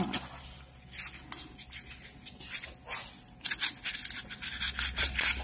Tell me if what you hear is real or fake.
real